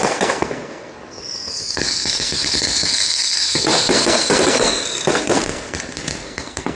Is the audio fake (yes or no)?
yes